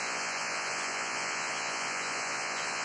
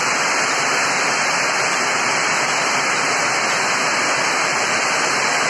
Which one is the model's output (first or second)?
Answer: first